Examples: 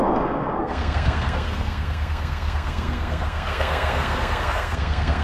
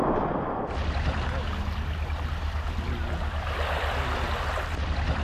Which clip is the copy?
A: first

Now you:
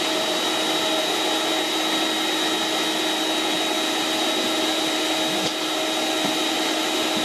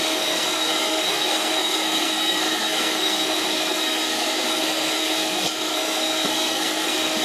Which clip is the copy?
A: second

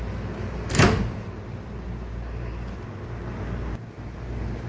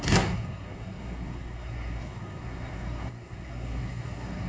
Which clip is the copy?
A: second